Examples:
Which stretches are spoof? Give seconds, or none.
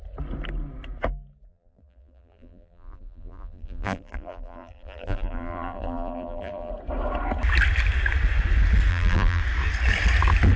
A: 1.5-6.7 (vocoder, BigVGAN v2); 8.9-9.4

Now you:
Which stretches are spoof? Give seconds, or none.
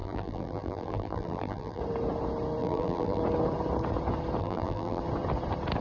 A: 0.0-1.8 (vocoder, BigVGAN v2); 2.6-3.2; 4.4-5.0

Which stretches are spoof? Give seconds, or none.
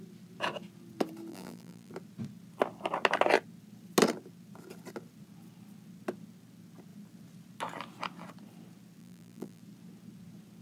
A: 1.3-1.9 (vocoder, BigVGAN v2); 9.0-9.6